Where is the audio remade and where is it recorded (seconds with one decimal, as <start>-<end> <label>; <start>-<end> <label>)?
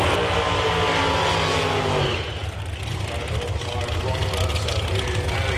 0.0-5.6 recorded